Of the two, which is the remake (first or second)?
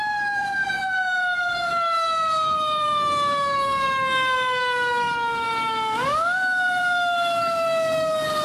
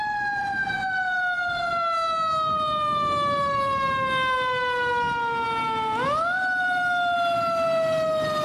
first